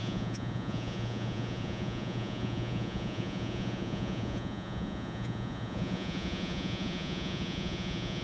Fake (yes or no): yes